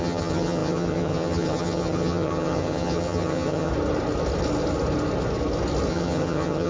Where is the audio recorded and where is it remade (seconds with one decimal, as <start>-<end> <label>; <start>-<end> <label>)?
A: 0.0-3.7 remade; 3.7-5.9 recorded; 5.9-6.7 remade